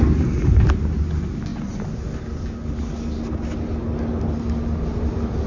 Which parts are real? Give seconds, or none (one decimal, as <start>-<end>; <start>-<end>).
0.0-5.5